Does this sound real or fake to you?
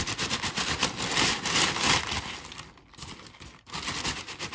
real